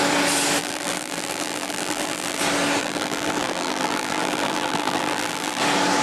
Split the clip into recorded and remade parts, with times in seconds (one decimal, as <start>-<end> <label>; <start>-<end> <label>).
0.0-0.6 recorded; 0.6-2.4 remade; 2.4-2.8 recorded; 2.8-5.6 remade; 5.6-6.0 recorded